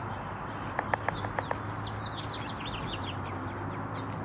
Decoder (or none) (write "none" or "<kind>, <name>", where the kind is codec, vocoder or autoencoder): none